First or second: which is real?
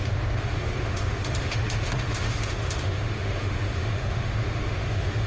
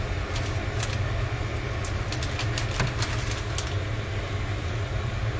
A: second